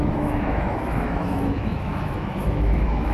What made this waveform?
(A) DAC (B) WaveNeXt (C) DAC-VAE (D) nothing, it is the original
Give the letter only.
C